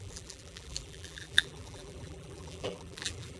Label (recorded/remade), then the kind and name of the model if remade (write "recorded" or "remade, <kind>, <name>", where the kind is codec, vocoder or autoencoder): remade, vocoder, BigVGAN v2